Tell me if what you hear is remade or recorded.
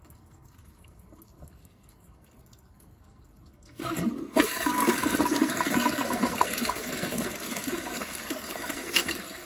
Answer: remade